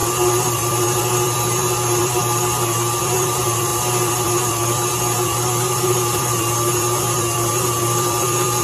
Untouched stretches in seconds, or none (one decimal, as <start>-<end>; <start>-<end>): 2.2-3.0